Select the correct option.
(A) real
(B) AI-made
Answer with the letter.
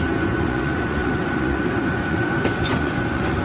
B